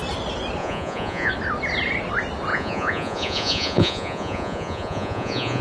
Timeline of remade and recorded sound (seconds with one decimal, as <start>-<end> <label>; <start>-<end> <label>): 0.0-0.6 recorded; 0.6-1.3 remade; 1.3-2.5 recorded; 2.5-5.6 remade